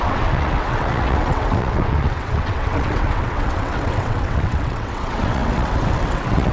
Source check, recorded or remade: remade